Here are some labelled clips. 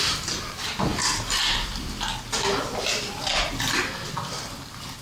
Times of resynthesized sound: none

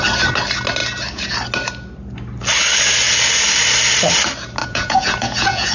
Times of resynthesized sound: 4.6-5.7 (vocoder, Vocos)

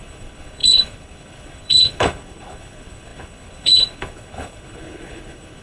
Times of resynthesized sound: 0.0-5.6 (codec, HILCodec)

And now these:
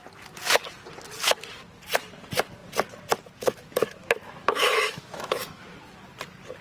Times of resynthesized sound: 4.0-5.6 (autoencoder, DAC-VAE)

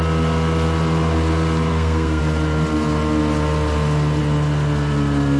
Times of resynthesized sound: 1.7-2.2 (codec, SNAC)

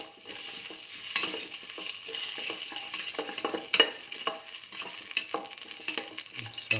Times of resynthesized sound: none

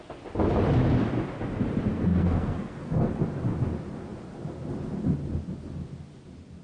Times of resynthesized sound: 1.9-3.1 (codec, SNAC)

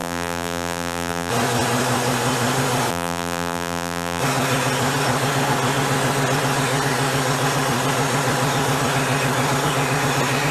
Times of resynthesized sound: 0.0-1.3 (vocoder, BigVGAN v2); 2.9-4.2